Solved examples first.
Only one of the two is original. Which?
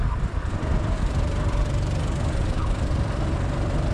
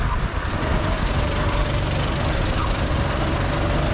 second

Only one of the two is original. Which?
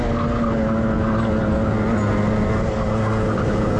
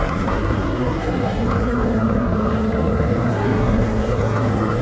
first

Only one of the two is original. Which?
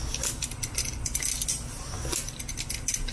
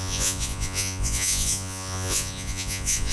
first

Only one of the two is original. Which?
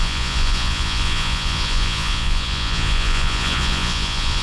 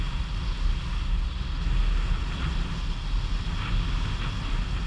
second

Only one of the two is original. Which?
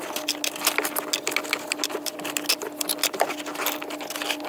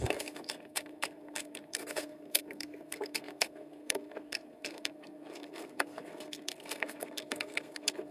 first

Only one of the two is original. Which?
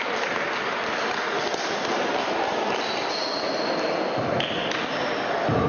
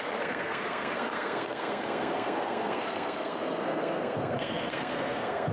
first